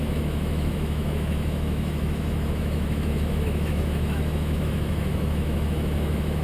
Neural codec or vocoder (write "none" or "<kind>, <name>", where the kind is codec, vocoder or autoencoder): autoencoder, DAC-VAE